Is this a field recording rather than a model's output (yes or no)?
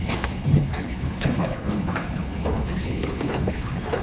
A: no